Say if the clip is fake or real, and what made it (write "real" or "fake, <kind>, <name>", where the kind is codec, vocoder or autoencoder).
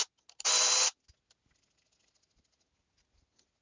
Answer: real